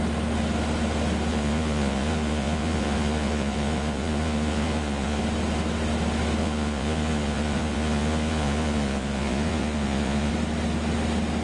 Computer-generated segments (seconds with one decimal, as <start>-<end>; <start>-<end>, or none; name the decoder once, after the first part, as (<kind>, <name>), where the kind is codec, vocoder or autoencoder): 1.3-5.2 (vocoder, Vocos); 6.4-10.3